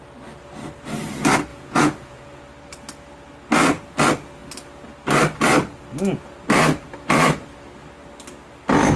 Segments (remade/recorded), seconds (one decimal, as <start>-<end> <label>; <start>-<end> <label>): 0.0-1.5 recorded; 1.5-2.4 remade; 2.4-9.0 recorded